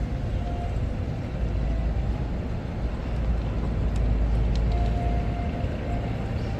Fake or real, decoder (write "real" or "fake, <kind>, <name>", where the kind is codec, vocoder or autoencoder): real